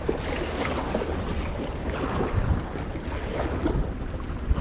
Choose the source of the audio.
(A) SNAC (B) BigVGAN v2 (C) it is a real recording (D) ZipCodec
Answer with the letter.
C